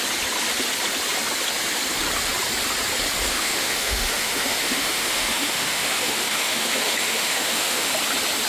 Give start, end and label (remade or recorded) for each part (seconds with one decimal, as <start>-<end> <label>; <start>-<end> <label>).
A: 0.0-3.3 recorded; 3.3-7.9 remade; 7.9-8.5 recorded